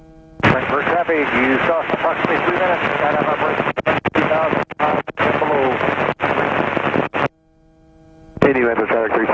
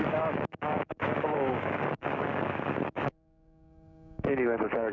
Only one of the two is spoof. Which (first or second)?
second